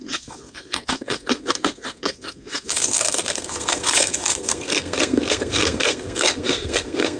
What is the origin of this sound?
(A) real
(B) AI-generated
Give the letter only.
B